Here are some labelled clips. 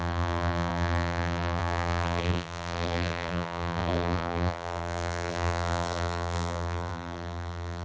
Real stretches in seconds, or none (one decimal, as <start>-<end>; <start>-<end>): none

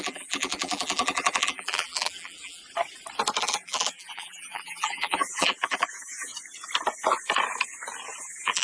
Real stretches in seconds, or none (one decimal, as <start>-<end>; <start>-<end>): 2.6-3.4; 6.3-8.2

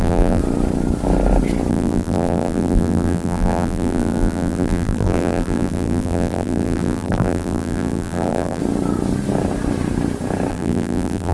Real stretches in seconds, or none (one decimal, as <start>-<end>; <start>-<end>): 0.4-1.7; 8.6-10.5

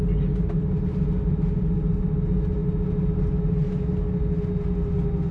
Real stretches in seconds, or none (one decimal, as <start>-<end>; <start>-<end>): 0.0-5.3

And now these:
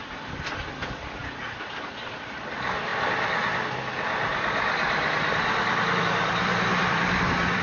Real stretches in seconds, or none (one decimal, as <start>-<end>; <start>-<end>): 2.9-6.0

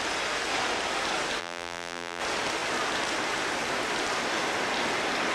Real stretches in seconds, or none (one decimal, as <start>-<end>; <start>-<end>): 0.0-1.4; 2.2-5.3

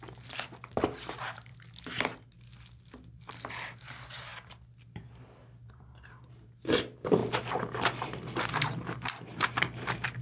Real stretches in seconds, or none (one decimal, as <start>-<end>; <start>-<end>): 1.5-3.5; 4.3-5.7

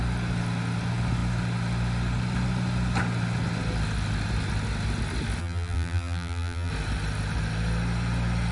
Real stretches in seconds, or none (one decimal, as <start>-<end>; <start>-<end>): 0.0-5.4; 6.7-8.5